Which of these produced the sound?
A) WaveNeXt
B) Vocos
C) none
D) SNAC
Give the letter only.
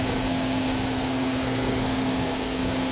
D